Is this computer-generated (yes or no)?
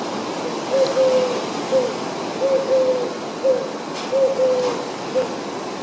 no